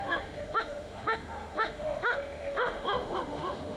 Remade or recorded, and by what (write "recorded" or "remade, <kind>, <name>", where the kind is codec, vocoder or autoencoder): remade, autoencoder, DAC-VAE